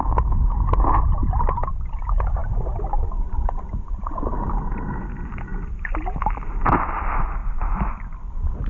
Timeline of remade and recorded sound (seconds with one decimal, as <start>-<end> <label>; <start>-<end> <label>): 0.0-1.2 recorded; 1.2-1.7 remade; 1.7-2.4 recorded; 2.4-4.2 remade; 4.2-8.7 recorded